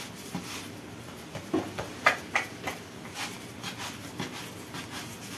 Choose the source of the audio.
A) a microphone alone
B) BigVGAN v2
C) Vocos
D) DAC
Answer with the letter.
A